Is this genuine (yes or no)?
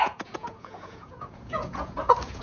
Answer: no